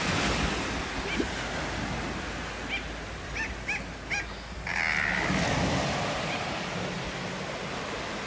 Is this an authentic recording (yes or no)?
yes